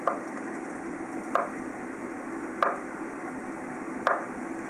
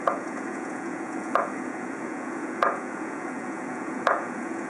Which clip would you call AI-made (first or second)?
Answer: second